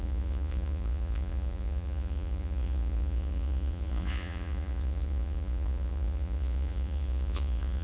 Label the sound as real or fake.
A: fake